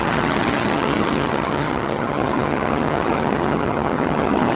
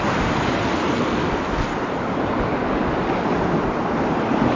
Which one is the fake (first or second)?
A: first